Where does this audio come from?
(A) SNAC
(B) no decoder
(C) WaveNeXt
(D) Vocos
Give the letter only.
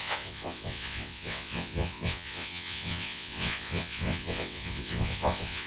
C